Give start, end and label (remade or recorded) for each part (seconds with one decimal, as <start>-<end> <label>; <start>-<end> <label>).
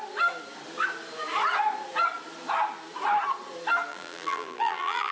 0.0-3.9 recorded; 3.9-5.1 remade